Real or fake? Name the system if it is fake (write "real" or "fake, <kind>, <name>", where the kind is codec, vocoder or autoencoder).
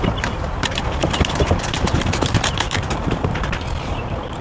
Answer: fake, vocoder, BigVGAN v2